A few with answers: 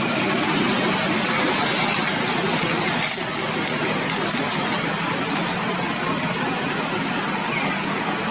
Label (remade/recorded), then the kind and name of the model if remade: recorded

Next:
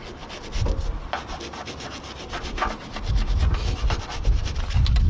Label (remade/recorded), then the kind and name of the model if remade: recorded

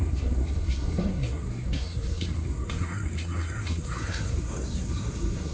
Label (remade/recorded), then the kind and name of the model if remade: remade, codec, SNAC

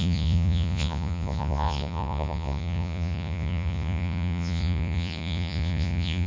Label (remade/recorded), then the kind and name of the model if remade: remade, vocoder, Vocos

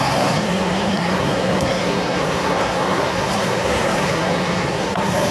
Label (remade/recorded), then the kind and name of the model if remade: remade, codec, SNAC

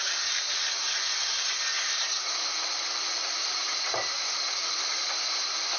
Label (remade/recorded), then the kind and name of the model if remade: recorded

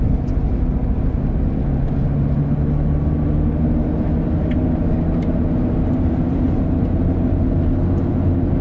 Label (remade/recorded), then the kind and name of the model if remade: recorded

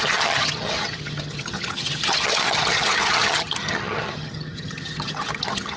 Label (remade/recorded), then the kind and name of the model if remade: remade, vocoder, HiFi-GAN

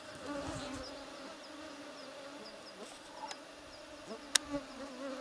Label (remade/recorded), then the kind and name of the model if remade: recorded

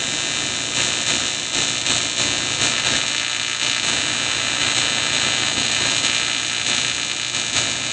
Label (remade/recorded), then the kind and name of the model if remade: recorded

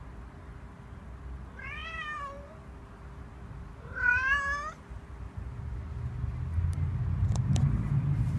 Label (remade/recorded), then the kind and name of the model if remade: recorded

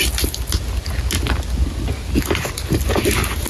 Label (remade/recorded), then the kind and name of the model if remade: recorded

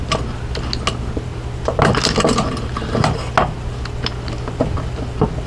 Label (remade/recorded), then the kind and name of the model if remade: recorded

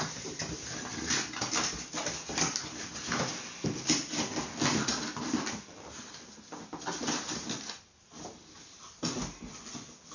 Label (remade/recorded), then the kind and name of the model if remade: recorded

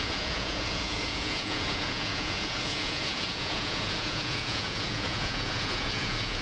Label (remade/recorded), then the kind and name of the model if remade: remade, vocoder, Vocos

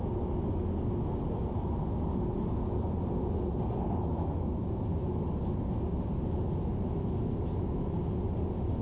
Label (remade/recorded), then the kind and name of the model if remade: recorded